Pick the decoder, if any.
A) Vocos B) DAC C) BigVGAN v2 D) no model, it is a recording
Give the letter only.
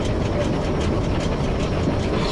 D